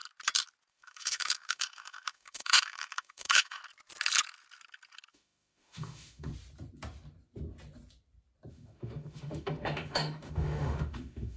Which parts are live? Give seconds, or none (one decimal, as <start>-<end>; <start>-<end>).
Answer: 0.0-0.7; 3.6-5.1; 6.3-8.5